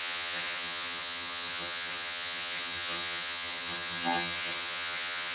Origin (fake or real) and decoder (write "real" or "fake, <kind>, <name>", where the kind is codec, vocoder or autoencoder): fake, vocoder, HiFi-GAN